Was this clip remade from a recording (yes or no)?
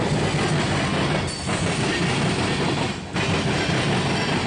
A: no